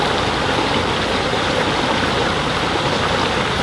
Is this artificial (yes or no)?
no